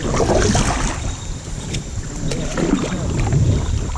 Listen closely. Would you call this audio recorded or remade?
recorded